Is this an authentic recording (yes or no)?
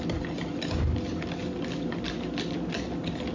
yes